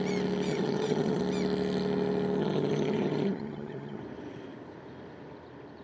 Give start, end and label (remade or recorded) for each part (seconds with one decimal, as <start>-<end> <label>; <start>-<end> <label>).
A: 0.0-0.5 recorded; 0.5-1.2 remade; 1.2-2.4 recorded; 2.4-4.0 remade; 4.0-5.8 recorded

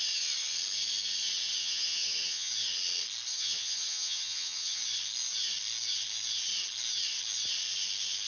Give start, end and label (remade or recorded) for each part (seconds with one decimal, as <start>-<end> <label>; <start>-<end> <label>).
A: 0.0-1.6 recorded; 1.6-2.5 remade; 2.5-3.3 recorded; 3.3-4.8 remade; 4.8-8.3 recorded

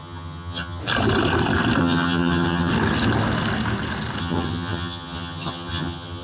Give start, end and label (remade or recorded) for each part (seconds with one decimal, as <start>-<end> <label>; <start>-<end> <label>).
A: 0.0-0.8 remade; 0.8-1.8 recorded; 1.8-2.7 remade; 2.7-4.2 recorded; 4.2-6.2 remade